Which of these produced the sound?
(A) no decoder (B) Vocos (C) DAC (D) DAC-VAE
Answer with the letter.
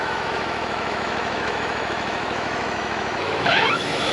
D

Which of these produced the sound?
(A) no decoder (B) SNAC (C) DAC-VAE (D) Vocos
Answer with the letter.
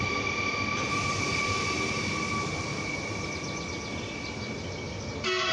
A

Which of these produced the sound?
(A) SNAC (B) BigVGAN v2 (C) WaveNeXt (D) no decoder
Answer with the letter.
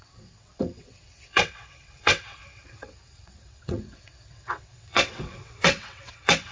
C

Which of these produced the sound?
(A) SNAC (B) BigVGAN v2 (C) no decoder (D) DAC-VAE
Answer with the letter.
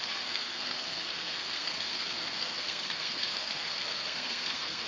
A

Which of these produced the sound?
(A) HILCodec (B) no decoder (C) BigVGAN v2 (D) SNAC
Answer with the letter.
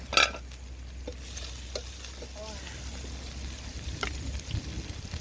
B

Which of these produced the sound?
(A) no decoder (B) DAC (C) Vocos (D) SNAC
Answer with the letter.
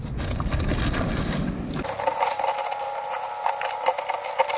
A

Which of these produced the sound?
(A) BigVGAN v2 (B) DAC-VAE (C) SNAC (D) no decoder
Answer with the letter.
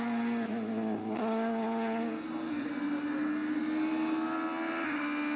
D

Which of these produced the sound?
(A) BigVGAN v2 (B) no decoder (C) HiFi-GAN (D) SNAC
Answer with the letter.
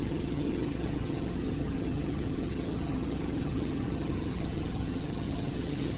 C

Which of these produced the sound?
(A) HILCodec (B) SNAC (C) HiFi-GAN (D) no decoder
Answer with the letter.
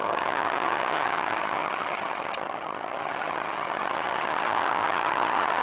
C